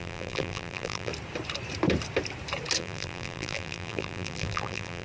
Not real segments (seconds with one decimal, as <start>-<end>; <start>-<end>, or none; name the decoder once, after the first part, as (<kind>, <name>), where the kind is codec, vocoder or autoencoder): 0.0-1.1 (vocoder, BigVGAN v2); 2.8-5.0